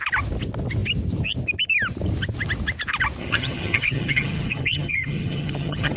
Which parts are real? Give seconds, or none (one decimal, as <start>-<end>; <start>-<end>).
0.0-3.2

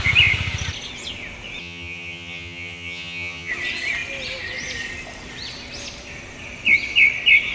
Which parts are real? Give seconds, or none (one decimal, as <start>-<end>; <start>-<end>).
0.0-1.6; 3.5-7.5

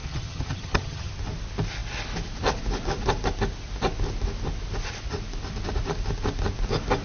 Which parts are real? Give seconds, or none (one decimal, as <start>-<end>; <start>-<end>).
1.1-7.0

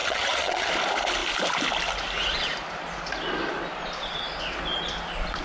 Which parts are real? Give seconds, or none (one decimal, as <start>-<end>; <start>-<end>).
0.7-5.4

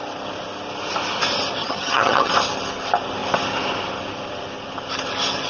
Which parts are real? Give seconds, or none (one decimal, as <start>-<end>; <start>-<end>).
0.0-1.6; 2.3-5.5

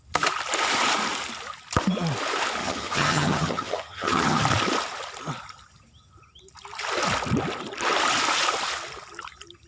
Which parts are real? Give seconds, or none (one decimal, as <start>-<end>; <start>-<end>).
0.0-2.6; 4.4-9.7

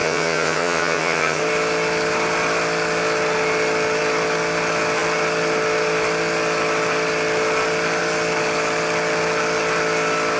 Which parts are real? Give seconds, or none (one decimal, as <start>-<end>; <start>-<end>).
1.4-10.4